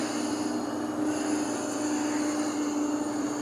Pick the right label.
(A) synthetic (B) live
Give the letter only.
B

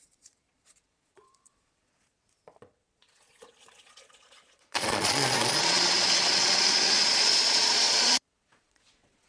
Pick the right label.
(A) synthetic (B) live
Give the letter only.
A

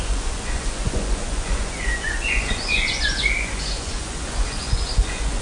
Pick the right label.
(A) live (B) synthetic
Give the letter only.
B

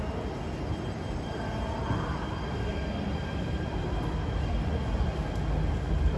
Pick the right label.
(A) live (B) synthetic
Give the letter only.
A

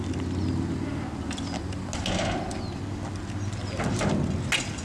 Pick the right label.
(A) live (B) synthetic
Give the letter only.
A